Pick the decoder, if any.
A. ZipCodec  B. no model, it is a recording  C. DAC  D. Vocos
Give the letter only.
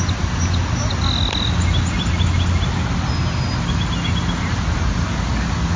B